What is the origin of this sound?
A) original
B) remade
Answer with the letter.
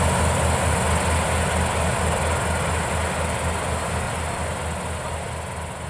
A